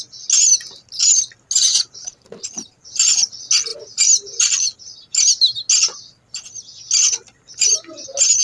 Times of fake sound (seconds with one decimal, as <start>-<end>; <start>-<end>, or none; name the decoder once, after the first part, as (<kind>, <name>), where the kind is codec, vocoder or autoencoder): 1.7-3.3 (vocoder, BigVGAN v2); 3.7-4.4